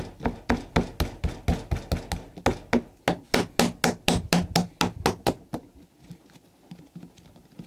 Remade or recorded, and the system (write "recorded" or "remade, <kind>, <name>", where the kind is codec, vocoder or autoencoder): recorded